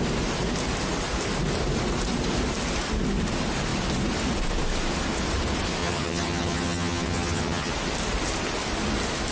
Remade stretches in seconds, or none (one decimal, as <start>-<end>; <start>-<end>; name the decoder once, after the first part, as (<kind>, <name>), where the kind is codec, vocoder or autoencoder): 5.8-7.7 (vocoder, HiFi-GAN)